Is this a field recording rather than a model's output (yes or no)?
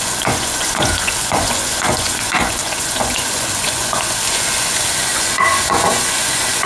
no